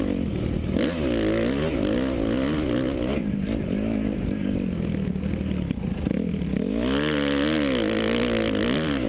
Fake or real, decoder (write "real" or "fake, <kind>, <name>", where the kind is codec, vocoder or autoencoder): real